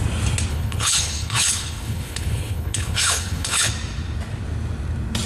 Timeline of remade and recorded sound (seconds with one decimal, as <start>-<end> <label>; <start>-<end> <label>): 0.0-0.5 recorded; 0.5-3.7 remade; 3.7-5.3 recorded